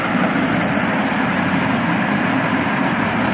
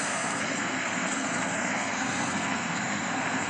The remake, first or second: second